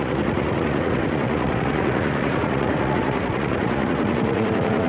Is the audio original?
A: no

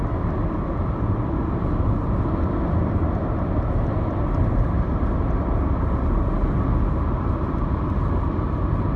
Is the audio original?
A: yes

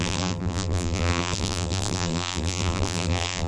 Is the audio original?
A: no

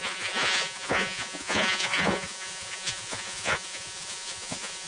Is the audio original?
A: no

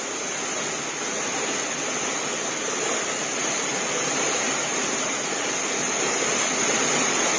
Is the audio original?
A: yes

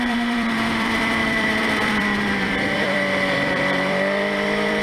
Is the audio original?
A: no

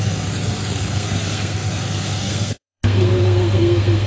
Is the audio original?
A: no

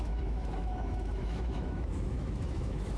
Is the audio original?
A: no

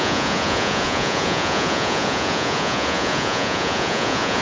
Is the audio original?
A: no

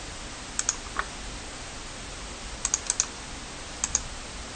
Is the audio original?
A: yes